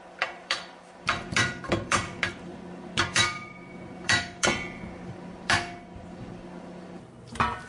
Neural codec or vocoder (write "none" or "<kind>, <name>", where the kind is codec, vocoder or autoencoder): vocoder, BigVGAN v2